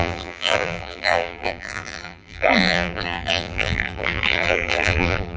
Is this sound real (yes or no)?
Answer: no